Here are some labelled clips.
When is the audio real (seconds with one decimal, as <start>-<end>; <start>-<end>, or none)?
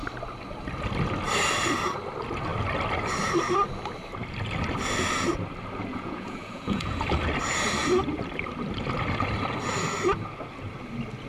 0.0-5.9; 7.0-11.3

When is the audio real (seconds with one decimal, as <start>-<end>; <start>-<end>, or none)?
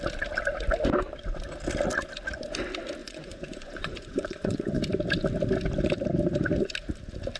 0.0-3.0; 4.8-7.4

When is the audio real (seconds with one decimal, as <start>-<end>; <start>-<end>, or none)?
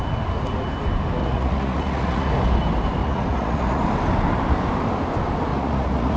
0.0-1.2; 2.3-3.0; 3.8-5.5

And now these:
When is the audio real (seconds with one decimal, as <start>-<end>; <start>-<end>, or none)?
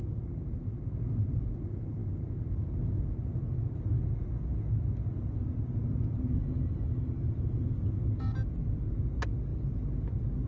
0.0-10.5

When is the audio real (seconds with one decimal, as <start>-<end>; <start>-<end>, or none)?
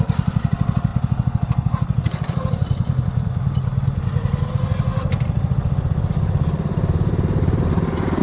0.0-8.2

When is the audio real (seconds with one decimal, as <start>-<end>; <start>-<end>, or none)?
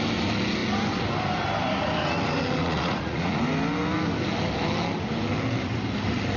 0.0-2.6; 3.4-6.4